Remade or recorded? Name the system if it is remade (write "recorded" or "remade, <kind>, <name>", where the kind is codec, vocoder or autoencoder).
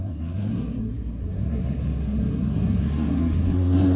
remade, codec, SNAC